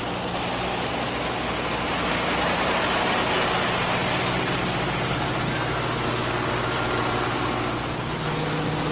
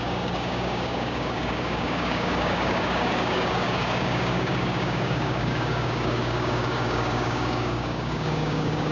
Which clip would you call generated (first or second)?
second